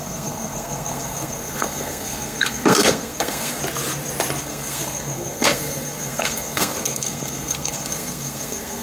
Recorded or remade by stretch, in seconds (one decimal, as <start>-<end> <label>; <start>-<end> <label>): 0.0-3.6 remade; 3.6-4.4 recorded; 4.4-8.8 remade